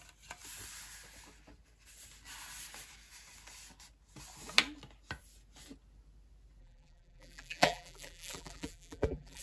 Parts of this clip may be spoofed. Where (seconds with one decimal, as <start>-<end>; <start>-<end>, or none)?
6.6-9.4